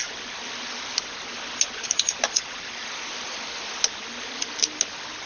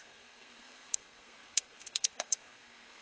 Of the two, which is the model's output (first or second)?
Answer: second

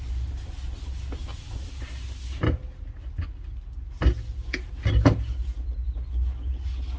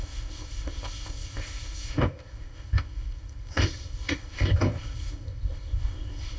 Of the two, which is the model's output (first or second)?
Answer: second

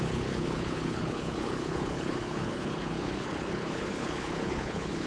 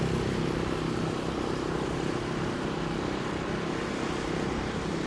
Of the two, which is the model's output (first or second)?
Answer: first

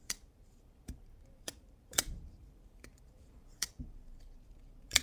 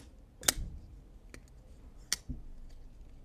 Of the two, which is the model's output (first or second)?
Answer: first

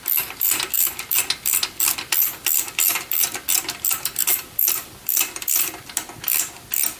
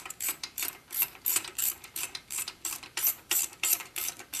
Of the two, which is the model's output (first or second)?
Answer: second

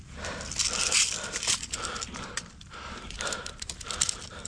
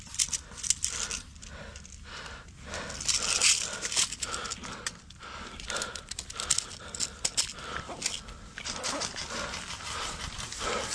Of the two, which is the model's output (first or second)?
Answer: first